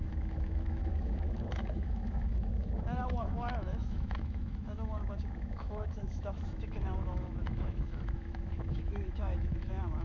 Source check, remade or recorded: remade